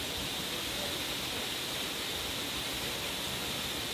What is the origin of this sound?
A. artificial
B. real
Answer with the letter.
B